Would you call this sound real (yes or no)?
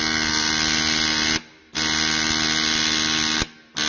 yes